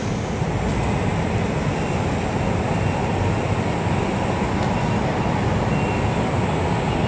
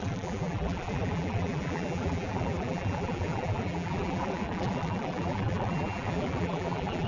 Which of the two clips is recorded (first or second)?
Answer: first